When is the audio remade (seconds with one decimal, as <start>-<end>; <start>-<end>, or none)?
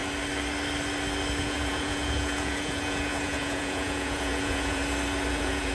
1.4-4.8; 5.3-5.7